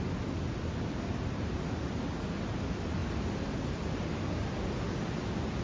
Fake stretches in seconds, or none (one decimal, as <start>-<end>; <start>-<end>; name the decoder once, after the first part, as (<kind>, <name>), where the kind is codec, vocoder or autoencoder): none

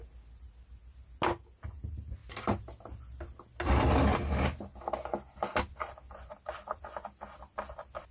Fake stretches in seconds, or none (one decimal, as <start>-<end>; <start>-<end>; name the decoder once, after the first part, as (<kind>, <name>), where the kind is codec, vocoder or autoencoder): none

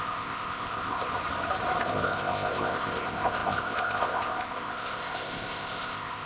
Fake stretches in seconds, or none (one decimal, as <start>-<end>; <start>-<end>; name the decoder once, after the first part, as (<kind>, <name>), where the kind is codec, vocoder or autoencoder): 0.0-1.1 (codec, ZipCodec); 1.8-6.3

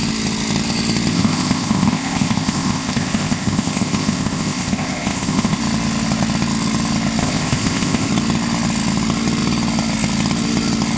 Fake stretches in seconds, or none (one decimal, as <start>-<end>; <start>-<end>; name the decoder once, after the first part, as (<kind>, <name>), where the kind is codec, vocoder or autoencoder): 1.1-5.6 (codec, ZipCodec); 7.2-8.1

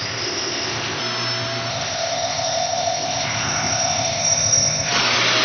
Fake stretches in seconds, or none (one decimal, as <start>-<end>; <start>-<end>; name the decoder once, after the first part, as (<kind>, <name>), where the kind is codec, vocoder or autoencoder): 0.0-1.0 (codec, ZipCodec); 1.7-4.9

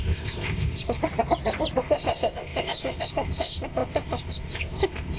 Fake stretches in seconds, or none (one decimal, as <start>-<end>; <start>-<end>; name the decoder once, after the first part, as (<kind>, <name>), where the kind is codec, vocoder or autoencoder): 0.0-1.0 (codec, ZipCodec); 1.8-5.2

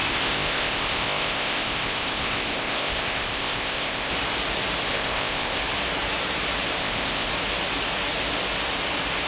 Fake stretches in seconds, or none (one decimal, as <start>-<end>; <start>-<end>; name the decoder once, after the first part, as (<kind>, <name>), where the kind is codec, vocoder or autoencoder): 0.0-4.1 (codec, ZipCodec); 4.9-5.6; 6.8-7.3